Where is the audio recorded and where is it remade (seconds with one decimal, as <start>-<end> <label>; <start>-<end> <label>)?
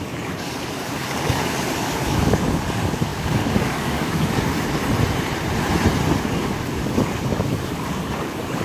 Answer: 0.0-4.8 remade; 4.8-6.2 recorded; 6.2-8.6 remade